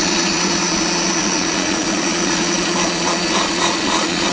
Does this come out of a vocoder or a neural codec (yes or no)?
yes